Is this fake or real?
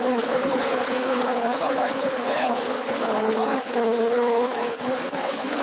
fake